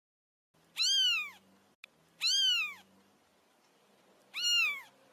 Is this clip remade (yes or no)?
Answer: no